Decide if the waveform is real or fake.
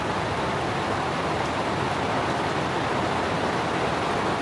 real